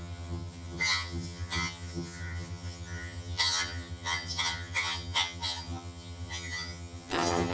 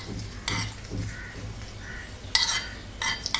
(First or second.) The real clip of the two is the second